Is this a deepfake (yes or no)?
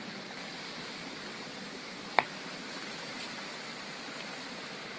no